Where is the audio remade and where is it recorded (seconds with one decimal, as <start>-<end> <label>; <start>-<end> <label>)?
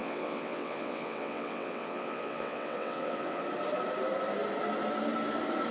0.0-3.4 remade; 3.4-5.7 recorded